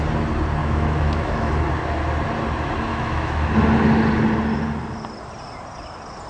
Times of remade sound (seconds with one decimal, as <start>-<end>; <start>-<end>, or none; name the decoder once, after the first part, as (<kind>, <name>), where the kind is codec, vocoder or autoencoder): 0.6-1.5 (autoencoder, DAC-VAE); 2.9-3.5